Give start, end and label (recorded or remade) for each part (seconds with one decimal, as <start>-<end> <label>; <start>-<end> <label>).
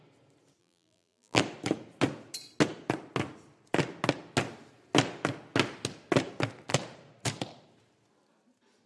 0.0-0.6 recorded; 0.6-1.4 remade; 1.4-8.9 recorded